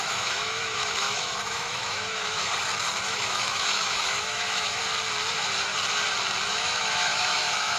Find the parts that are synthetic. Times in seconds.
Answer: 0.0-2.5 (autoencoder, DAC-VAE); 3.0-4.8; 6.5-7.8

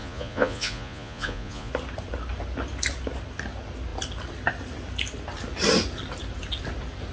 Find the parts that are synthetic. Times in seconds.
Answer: 0.0-1.7 (vocoder, Vocos)

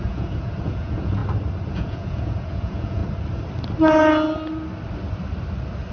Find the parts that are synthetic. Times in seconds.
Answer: 0.0-1.2 (vocoder, Vocos); 1.7-3.0

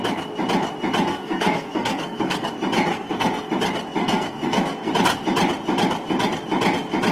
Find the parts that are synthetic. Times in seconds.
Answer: 1.1-2.5 (codec, SNAC); 2.9-3.5; 4.0-4.9

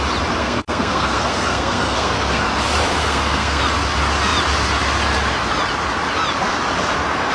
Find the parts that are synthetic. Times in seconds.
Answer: 0.4-2.4 (codec, SNAC); 3.0-3.6

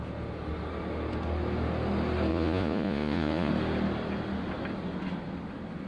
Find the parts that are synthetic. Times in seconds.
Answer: 2.3-3.5 (vocoder, Vocos)

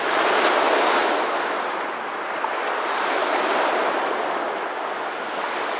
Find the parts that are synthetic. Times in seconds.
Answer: none